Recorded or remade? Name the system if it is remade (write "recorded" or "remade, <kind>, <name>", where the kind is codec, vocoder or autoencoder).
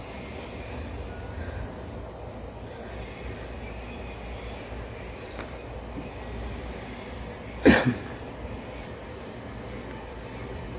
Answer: recorded